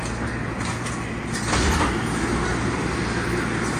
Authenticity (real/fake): real